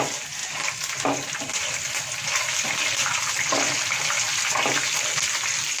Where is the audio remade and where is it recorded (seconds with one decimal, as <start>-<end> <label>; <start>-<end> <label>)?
0.0-5.8 recorded